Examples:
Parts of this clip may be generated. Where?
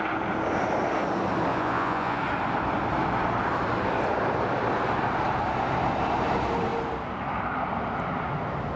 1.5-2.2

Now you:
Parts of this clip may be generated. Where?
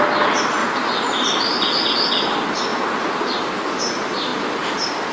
0.6-1.8; 2.7-3.4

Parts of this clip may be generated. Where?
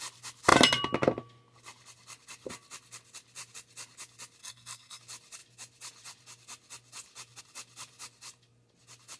4.4-5.0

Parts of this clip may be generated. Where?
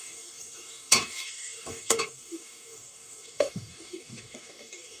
0.0-5.0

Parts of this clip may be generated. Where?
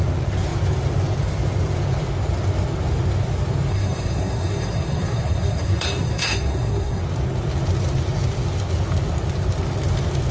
3.7-7.0